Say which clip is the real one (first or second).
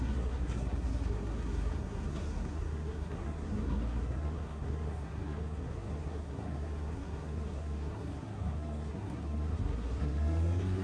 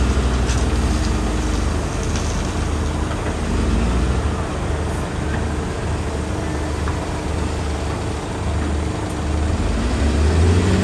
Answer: second